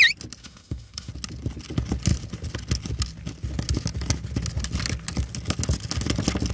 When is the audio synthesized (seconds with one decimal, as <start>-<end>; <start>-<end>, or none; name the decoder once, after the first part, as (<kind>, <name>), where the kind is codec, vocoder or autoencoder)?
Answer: 0.4-1.1 (autoencoder, DAC-VAE)